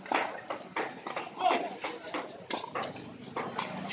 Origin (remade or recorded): recorded